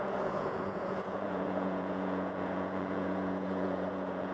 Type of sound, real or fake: fake